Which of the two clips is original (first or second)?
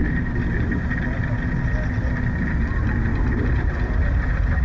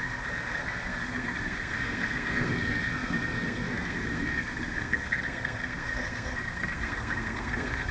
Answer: first